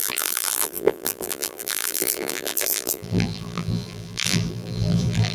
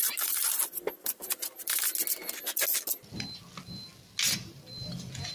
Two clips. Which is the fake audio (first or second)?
first